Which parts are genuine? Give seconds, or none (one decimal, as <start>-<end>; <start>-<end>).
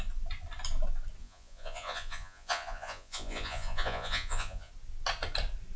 0.0-1.2; 4.7-5.8